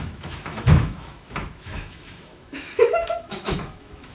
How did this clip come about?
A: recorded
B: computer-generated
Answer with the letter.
B